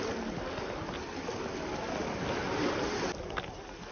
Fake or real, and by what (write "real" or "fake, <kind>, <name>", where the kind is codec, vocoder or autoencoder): real